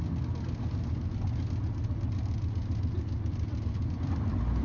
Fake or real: real